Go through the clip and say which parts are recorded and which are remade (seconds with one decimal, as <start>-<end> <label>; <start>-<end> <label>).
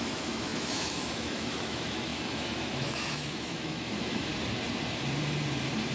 0.0-4.3 remade; 4.3-5.9 recorded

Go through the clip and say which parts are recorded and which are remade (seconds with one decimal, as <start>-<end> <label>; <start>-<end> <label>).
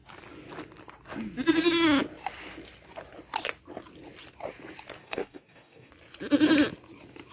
0.0-5.0 recorded; 5.0-5.9 remade; 5.9-7.3 recorded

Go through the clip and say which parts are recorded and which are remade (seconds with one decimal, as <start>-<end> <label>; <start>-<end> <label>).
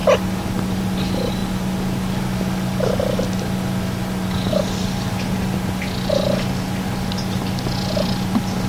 0.0-8.7 recorded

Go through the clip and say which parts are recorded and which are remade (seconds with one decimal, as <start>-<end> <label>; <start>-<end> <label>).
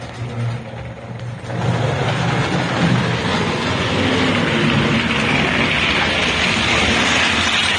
0.0-3.3 recorded; 3.3-3.9 remade; 3.9-7.8 recorded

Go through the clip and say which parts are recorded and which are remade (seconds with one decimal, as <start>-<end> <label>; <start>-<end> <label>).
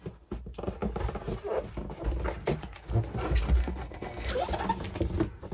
0.0-3.6 recorded; 3.6-4.3 remade; 4.3-5.5 recorded